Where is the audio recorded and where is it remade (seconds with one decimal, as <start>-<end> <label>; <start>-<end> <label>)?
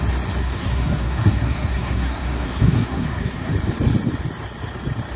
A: 0.0-0.4 recorded; 0.4-3.5 remade; 3.5-5.2 recorded